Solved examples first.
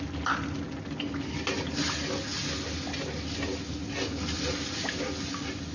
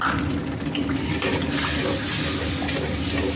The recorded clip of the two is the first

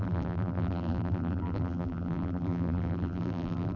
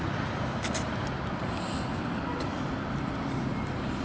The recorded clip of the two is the second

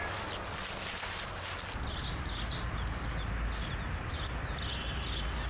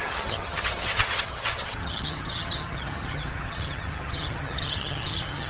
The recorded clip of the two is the first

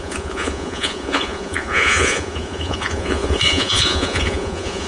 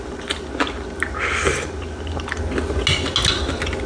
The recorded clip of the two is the second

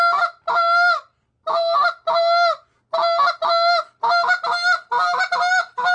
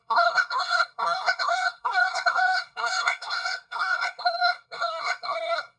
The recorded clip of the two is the first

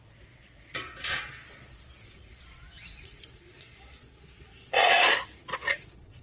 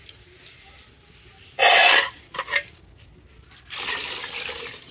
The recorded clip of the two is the second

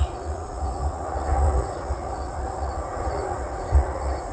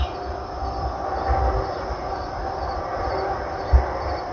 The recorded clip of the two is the second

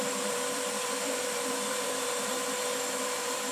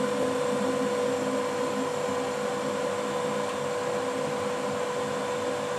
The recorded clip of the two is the second